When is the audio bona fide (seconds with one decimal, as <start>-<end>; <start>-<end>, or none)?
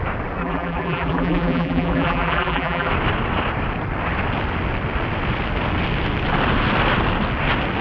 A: 0.0-0.4; 2.9-7.8